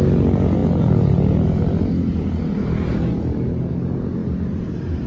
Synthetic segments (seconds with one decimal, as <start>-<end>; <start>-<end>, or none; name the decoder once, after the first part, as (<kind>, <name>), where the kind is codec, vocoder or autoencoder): none

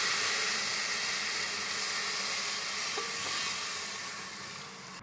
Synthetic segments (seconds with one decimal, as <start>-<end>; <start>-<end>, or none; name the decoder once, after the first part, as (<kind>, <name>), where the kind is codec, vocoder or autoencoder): none

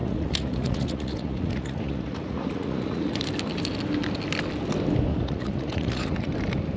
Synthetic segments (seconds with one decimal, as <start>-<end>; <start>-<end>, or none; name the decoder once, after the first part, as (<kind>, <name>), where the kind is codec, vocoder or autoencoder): 0.0-3.3 (vocoder, Vocos); 5.1-6.3

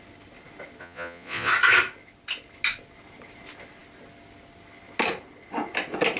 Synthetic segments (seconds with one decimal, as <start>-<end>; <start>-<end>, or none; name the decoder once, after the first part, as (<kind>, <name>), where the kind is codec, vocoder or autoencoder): 0.8-1.5 (vocoder, Vocos)

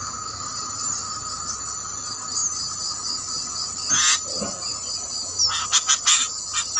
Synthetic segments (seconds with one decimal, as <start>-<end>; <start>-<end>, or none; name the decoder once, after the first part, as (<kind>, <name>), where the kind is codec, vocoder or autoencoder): none

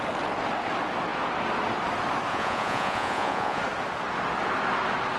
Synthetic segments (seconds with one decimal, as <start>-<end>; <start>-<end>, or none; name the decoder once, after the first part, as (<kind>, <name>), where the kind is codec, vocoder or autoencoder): 2.3-3.6 (vocoder, Vocos)